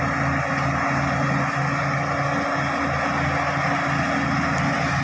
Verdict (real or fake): real